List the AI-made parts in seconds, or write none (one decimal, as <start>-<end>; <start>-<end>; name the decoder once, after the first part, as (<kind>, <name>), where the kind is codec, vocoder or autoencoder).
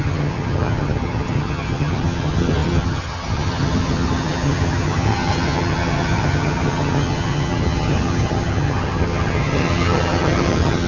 0.0-10.9 (vocoder, HiFi-GAN)